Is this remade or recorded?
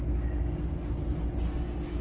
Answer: recorded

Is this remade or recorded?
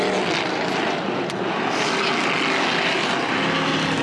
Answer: recorded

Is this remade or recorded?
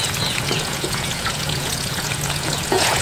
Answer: remade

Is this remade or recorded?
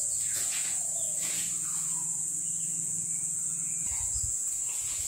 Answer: remade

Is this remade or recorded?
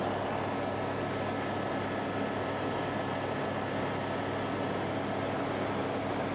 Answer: recorded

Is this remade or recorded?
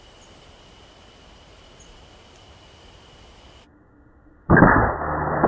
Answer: remade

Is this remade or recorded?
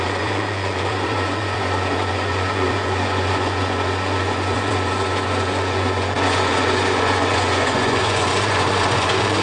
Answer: remade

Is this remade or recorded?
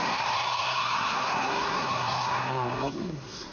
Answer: remade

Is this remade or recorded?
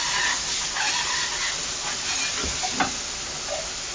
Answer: recorded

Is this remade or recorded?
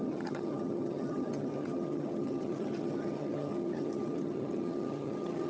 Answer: remade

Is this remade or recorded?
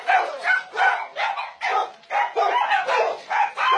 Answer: recorded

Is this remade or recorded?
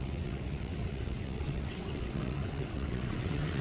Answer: remade